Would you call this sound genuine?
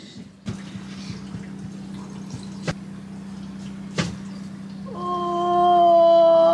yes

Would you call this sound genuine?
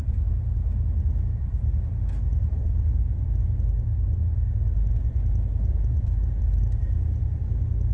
yes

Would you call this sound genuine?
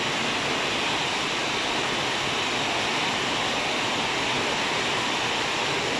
yes